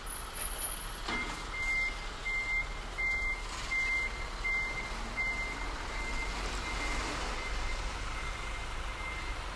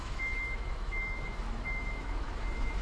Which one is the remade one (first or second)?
second